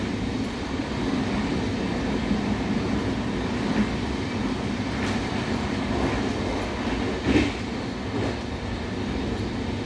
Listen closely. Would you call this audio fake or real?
real